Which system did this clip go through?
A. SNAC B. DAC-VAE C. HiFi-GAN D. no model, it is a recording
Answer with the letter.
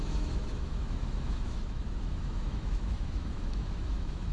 B